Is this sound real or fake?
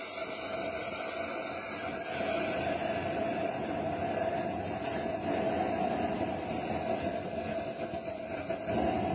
real